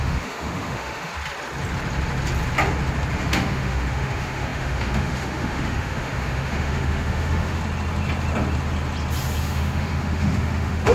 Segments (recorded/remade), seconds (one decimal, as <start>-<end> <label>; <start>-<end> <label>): 0.0-1.1 remade; 1.1-3.2 recorded; 3.2-7.6 remade; 7.6-9.4 recorded; 9.4-10.9 remade

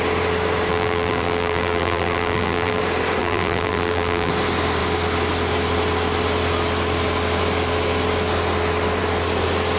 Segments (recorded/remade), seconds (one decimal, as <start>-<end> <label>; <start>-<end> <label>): 0.0-0.7 recorded; 0.7-2.8 remade; 2.8-3.2 recorded; 3.2-4.3 remade; 4.3-9.8 recorded

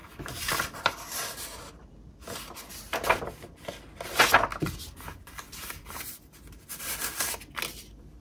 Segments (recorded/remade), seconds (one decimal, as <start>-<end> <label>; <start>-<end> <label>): 0.0-2.1 remade; 2.1-4.5 recorded; 4.5-6.0 remade; 6.0-8.2 recorded